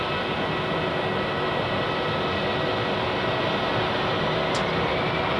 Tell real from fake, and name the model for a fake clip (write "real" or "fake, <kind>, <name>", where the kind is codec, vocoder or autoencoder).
real